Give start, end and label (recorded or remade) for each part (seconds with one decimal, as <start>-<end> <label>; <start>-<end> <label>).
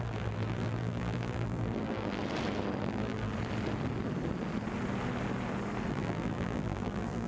0.0-2.2 remade; 2.2-2.8 recorded; 2.8-3.3 remade; 3.3-5.9 recorded; 5.9-7.3 remade